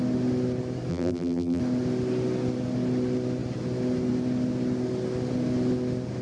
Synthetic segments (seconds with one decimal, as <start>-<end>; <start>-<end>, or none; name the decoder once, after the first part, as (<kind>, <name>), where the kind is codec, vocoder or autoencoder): 0.9-1.6 (vocoder, BigVGAN v2)